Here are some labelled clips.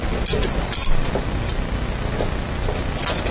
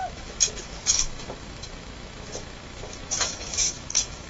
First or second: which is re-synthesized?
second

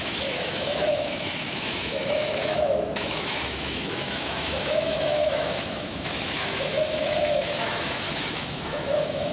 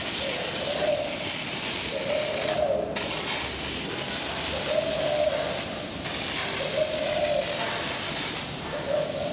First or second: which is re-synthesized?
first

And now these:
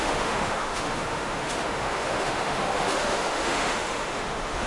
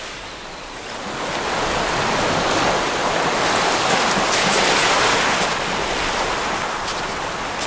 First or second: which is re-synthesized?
first